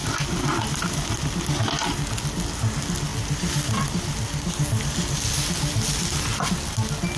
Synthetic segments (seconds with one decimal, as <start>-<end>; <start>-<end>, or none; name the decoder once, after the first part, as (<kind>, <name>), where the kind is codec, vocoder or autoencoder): none